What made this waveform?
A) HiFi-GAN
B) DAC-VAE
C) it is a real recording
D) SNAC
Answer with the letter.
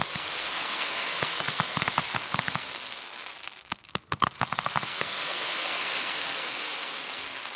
D